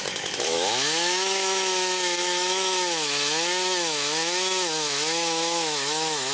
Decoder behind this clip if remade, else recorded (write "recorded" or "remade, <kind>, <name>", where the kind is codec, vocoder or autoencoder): remade, autoencoder, DAC-VAE